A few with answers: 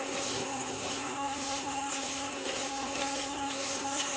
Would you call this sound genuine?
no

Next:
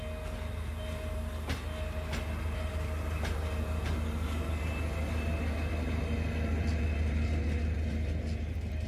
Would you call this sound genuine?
yes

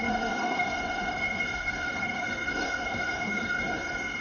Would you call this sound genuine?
no